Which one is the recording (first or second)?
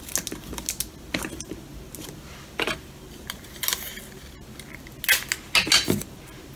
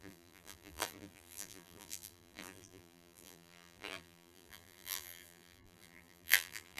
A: first